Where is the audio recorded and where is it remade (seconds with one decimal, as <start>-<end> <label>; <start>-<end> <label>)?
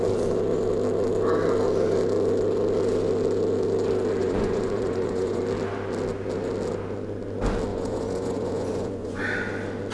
0.0-4.2 recorded; 4.2-5.4 remade; 5.4-7.7 recorded; 7.7-9.2 remade; 9.2-9.9 recorded